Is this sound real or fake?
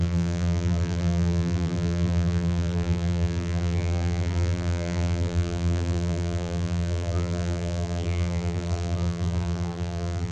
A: fake